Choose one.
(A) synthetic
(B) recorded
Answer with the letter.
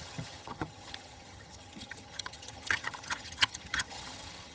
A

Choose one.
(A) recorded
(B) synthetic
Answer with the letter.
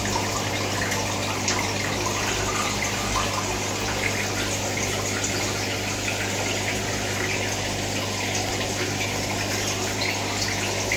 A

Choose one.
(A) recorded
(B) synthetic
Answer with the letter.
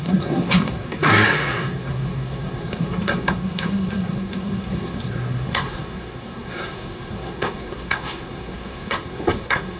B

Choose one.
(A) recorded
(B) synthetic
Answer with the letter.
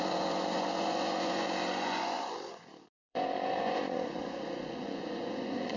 B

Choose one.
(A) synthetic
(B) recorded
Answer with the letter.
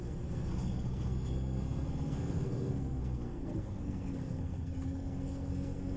A